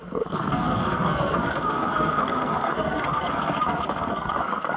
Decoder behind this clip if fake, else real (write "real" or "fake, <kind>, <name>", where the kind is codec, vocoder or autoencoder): fake, codec, SNAC